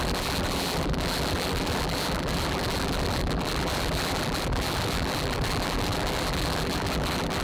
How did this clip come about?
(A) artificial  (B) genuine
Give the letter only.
A